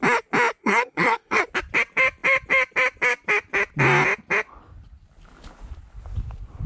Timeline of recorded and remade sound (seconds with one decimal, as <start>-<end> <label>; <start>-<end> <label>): 0.0-0.6 recorded; 0.6-1.4 remade; 1.4-6.7 recorded